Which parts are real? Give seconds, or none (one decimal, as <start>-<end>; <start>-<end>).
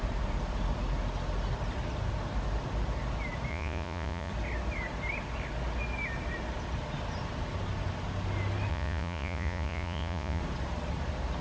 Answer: 0.0-3.5; 4.3-8.7; 10.4-11.4